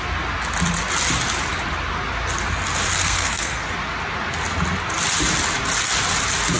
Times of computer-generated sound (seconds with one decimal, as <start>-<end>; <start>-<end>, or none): 3.0-3.7